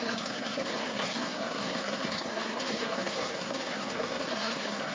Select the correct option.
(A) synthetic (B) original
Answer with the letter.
A